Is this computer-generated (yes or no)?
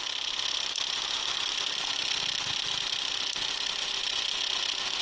no